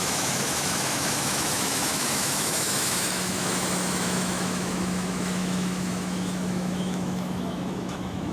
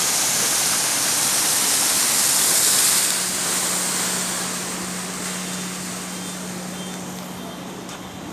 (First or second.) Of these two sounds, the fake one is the first